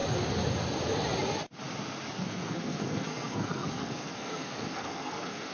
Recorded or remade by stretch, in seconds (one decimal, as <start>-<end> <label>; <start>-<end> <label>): 0.0-2.2 recorded; 2.2-5.5 remade